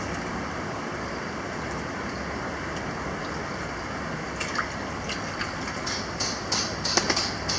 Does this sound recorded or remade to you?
recorded